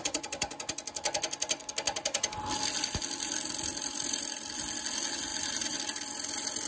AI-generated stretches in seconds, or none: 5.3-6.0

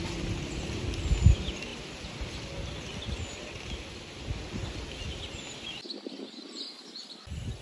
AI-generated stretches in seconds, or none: none

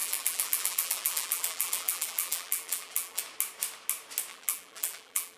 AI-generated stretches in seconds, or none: 0.0-3.2; 4.3-5.4

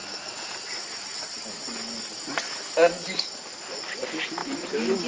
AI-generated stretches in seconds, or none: 4.4-5.1

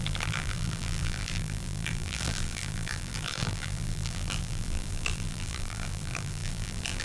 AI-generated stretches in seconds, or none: 0.0-7.0